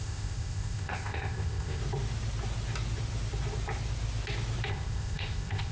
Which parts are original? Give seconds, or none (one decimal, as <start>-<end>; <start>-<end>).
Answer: 1.8-4.7